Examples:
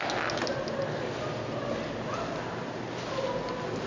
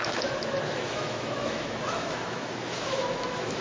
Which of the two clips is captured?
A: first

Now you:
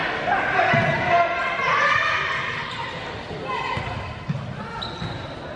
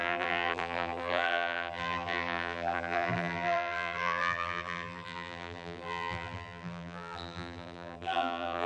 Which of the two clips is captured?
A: first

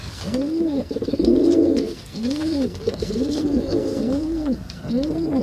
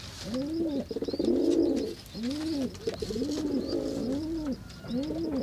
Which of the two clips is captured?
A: second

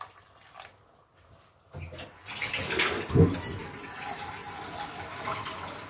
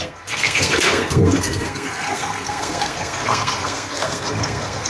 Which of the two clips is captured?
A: first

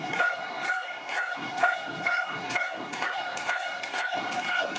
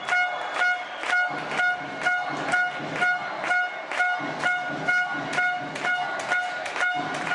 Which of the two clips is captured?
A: second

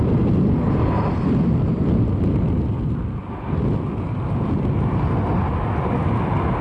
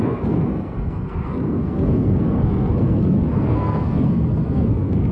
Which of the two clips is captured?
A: first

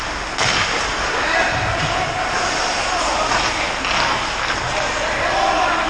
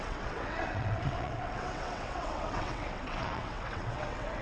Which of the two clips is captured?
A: first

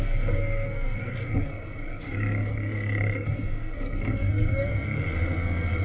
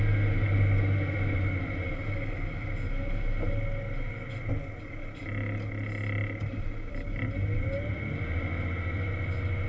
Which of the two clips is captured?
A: second